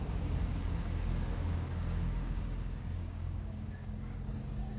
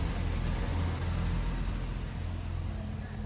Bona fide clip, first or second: second